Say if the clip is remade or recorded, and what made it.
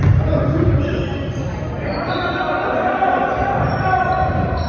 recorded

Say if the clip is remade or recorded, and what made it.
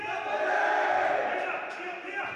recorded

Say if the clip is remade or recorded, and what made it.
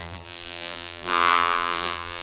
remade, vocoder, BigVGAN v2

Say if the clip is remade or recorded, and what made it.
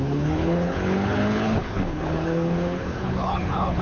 remade, codec, HILCodec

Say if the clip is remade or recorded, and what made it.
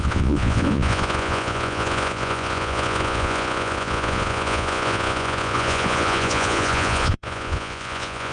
remade, vocoder, Vocos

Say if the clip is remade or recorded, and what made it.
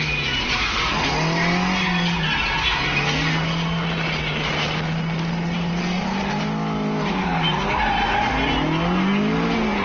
recorded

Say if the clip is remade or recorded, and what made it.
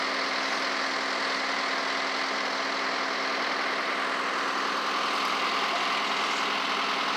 recorded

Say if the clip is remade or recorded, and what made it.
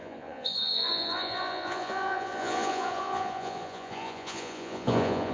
remade, vocoder, Vocos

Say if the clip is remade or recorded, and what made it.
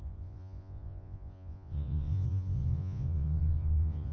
remade, vocoder, Vocos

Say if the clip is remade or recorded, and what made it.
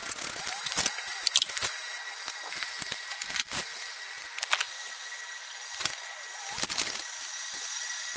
recorded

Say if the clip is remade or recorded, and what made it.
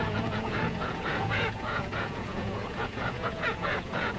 remade, vocoder, Vocos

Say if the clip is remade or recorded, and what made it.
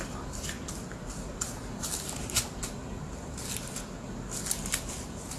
recorded